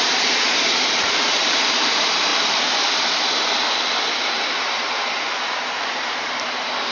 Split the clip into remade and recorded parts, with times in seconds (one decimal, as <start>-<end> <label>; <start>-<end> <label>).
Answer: 0.0-2.3 remade; 2.3-4.1 recorded; 4.1-6.9 remade